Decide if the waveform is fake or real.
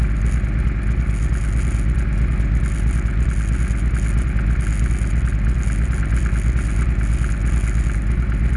real